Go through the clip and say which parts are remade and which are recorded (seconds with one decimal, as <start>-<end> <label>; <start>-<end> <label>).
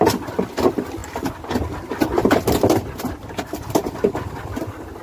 0.0-5.0 recorded